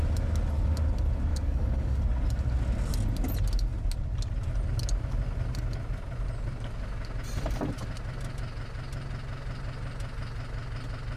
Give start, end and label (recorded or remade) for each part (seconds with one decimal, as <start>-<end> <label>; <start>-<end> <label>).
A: 0.0-1.3 recorded; 1.3-2.0 remade; 2.0-11.2 recorded